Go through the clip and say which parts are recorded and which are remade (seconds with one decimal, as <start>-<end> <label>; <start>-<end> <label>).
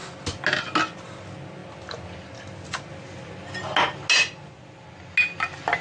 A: 0.0-5.8 recorded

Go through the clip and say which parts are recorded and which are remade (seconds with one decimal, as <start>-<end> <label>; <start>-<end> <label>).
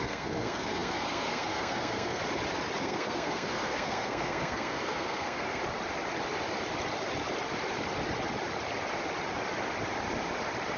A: 0.0-2.2 remade; 2.2-2.8 recorded; 2.8-5.6 remade; 5.6-10.8 recorded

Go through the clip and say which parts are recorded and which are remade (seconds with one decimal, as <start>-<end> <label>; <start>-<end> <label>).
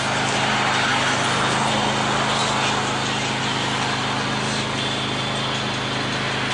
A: 0.0-6.5 recorded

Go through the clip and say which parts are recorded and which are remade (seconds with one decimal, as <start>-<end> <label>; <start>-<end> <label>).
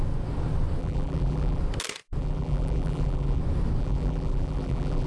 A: 0.0-0.8 recorded; 0.8-1.6 remade; 1.6-2.2 recorded; 2.2-3.4 remade; 3.4-3.8 recorded; 3.8-5.1 remade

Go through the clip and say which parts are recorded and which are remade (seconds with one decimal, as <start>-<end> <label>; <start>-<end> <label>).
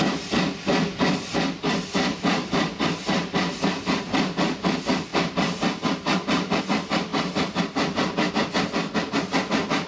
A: 0.0-9.9 recorded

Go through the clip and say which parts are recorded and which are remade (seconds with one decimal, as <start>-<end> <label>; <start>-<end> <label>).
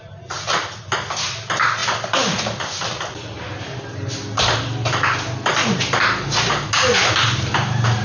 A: 0.0-8.0 recorded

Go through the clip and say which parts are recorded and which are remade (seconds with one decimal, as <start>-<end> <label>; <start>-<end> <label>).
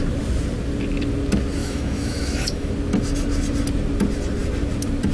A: 0.0-1.6 recorded; 1.6-2.7 remade; 2.7-5.1 recorded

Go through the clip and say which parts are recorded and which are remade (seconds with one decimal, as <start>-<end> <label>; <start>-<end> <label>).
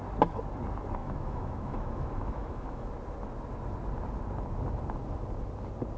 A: 0.0-1.0 recorded; 1.0-2.9 remade; 2.9-6.0 recorded